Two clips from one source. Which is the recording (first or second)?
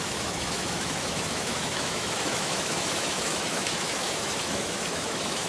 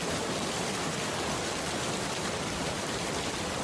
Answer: second